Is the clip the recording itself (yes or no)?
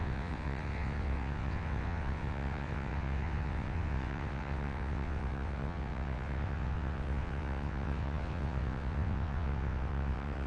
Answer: no